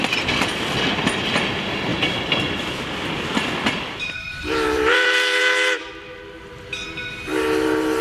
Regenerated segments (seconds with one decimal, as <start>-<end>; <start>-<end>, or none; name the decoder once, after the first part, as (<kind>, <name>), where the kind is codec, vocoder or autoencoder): 1.9-5.4 (vocoder, BigVGAN v2)